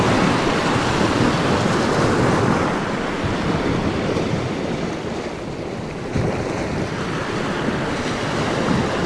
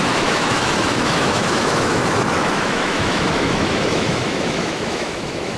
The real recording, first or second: first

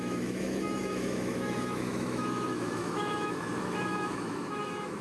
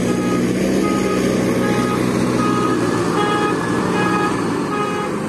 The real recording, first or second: second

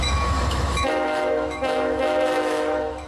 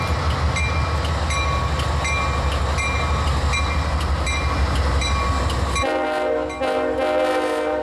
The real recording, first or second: second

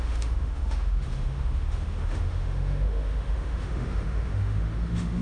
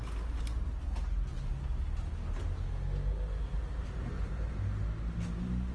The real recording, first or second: second